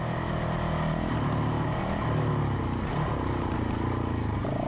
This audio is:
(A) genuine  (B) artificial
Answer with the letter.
A